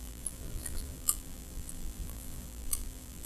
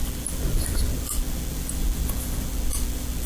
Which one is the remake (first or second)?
first